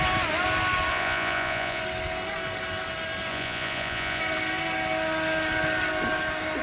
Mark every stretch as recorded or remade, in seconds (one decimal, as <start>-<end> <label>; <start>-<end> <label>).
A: 0.0-0.9 recorded; 0.9-1.8 remade; 1.8-3.3 recorded; 3.3-4.2 remade; 4.2-6.6 recorded